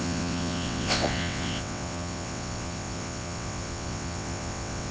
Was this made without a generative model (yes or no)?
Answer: no